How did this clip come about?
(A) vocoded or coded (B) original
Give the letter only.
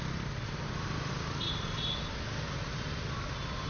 B